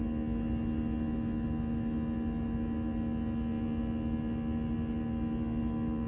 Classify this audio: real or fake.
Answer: real